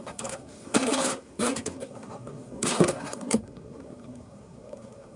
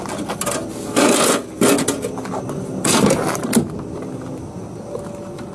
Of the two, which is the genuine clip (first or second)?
second